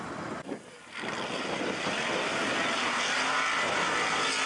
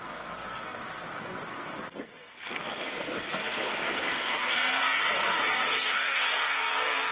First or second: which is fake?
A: second